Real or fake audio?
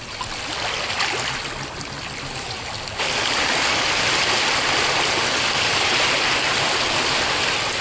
real